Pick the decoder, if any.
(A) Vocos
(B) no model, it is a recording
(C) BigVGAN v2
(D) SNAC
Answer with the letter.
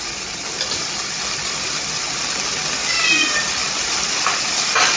B